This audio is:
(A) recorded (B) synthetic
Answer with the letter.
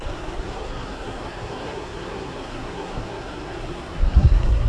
B